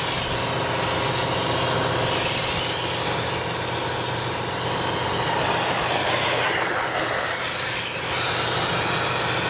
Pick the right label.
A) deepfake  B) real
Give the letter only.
B